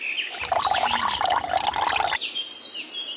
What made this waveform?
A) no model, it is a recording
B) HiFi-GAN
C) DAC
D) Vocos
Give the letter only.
A